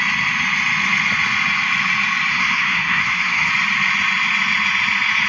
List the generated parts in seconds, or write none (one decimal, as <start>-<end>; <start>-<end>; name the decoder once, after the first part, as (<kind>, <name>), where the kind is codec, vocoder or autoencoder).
2.3-3.5 (codec, SNAC)